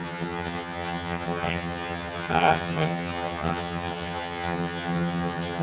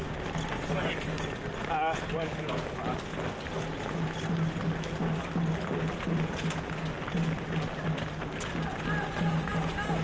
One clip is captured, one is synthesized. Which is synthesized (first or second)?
first